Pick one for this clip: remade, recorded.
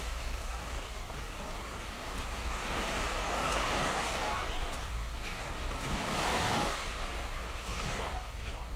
remade